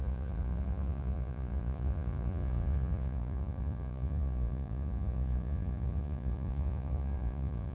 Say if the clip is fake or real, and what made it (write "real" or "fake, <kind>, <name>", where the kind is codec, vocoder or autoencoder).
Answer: fake, vocoder, Vocos